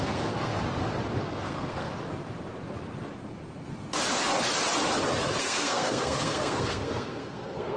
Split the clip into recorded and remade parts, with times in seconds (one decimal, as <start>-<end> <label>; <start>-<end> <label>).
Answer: 0.0-0.5 remade; 0.5-1.2 recorded; 1.2-1.9 remade; 1.9-5.4 recorded; 5.4-7.8 remade